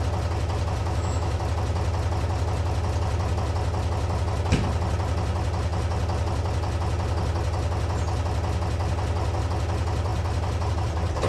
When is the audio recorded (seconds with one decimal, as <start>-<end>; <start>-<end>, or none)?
0.0-0.8; 1.4-11.3